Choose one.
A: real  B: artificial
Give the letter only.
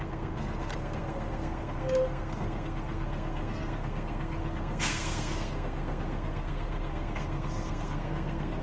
B